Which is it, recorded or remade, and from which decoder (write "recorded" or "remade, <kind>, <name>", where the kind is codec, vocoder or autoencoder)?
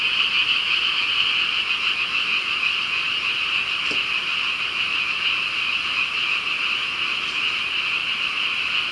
recorded